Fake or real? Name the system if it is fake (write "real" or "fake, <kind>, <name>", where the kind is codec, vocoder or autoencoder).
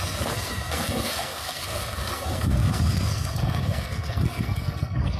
fake, codec, SNAC